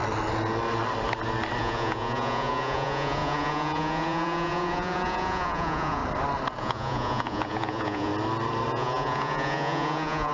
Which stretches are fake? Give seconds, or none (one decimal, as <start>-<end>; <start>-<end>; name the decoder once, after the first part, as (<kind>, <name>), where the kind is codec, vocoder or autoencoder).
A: 1.6-6.0 (vocoder, Vocos); 6.6-8.1; 8.7-10.3